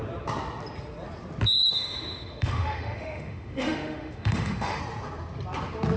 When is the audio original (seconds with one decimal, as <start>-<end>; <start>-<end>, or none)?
0.0-1.6; 4.8-6.0